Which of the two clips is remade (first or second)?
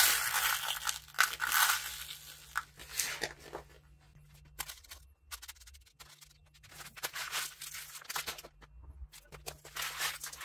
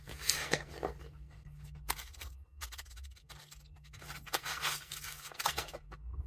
second